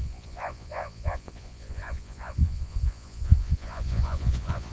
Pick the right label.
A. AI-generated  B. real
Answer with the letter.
A